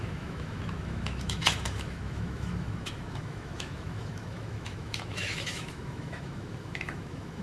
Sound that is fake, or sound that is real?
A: fake